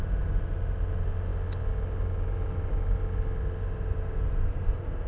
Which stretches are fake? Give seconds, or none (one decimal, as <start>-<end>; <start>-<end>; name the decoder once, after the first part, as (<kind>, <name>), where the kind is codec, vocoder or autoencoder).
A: none